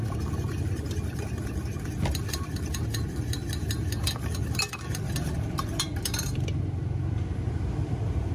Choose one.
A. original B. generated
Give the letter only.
A